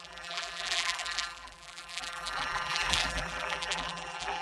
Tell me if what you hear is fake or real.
fake